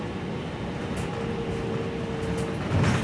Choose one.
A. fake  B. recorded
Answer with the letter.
B